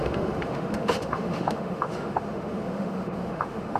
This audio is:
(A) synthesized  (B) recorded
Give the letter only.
A